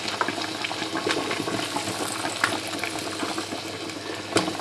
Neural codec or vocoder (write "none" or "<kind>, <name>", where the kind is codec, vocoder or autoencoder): none